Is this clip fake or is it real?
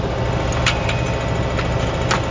real